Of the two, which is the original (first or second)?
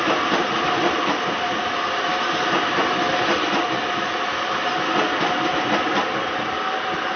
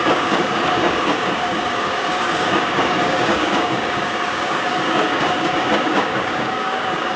first